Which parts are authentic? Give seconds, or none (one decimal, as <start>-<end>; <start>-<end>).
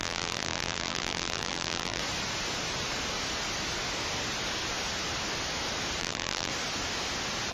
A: 2.0-6.0; 6.5-7.5